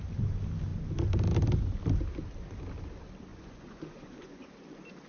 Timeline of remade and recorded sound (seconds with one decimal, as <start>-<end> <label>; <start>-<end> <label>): 0.0-3.3 recorded; 3.3-4.5 remade; 4.5-5.1 recorded